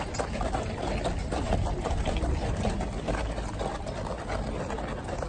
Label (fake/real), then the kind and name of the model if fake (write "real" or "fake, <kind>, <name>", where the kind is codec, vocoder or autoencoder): real